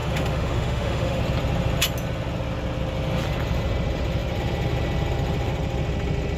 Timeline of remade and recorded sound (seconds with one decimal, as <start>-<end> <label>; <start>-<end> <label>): 0.0-1.2 remade; 1.2-6.4 recorded